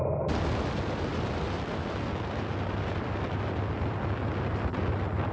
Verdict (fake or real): real